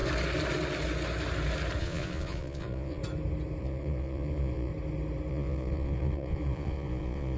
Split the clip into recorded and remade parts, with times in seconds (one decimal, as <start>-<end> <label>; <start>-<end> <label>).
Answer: 0.0-1.8 recorded; 1.8-3.0 remade; 3.0-3.6 recorded; 3.6-4.7 remade; 4.7-5.3 recorded; 5.3-7.4 remade